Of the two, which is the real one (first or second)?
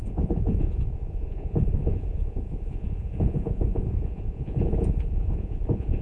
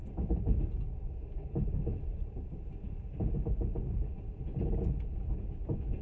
second